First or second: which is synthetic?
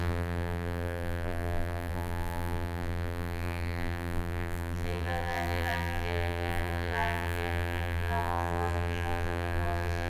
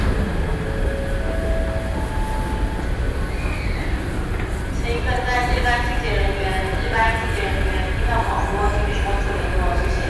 first